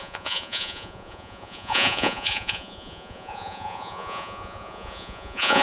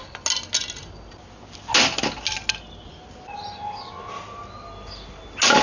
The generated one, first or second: first